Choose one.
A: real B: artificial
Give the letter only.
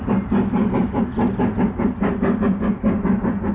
A